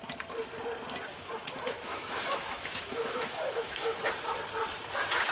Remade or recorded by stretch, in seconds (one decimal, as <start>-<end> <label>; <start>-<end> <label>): 0.0-1.1 recorded; 1.1-4.0 remade; 4.0-5.3 recorded